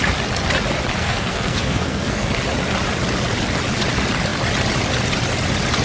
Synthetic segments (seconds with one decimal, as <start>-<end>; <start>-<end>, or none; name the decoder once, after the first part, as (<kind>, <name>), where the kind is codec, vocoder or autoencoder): 0.9-2.4 (codec, SNAC)

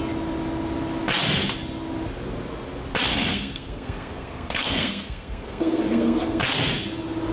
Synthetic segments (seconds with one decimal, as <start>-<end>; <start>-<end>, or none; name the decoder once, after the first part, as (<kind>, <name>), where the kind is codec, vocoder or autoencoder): 3.1-6.4 (codec, SNAC)

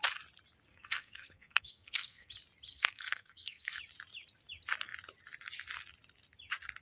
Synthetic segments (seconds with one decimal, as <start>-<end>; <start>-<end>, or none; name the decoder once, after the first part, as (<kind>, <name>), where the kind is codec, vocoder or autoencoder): 0.7-2.3 (codec, SNAC); 2.7-3.8

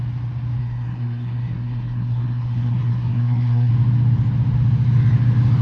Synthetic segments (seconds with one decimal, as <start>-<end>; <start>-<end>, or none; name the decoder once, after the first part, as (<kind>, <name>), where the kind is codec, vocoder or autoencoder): 0.6-3.7 (codec, SNAC)

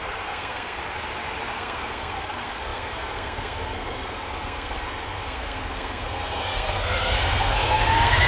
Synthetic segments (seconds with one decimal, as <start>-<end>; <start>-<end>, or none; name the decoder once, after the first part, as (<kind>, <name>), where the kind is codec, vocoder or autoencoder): 0.0-0.8 (codec, SNAC); 1.6-8.3